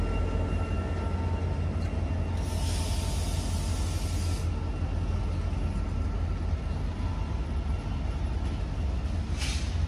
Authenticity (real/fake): real